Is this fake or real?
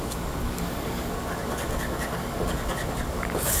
fake